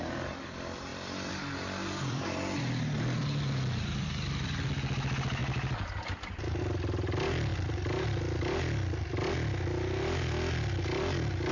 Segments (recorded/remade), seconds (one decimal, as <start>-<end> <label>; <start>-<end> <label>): 0.0-0.9 recorded; 0.9-3.2 remade; 3.2-5.4 recorded; 5.4-6.6 remade; 6.6-7.5 recorded; 7.5-8.2 remade; 8.2-11.5 recorded